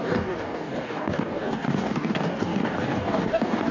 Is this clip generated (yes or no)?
yes